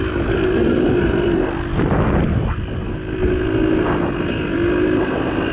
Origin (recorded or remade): recorded